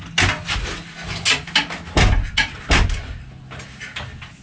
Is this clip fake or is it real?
real